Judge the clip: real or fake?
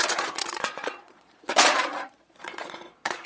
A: fake